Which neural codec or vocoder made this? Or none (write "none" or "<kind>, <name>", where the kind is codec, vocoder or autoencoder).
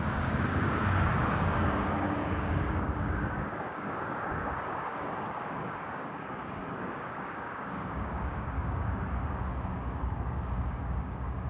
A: codec, DAC